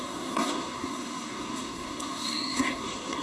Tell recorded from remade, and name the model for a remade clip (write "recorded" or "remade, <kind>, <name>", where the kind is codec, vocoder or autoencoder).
remade, codec, SNAC